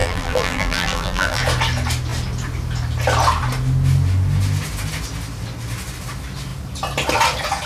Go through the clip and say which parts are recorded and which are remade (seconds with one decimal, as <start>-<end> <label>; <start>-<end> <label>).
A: 0.0-1.4 remade; 1.4-7.7 recorded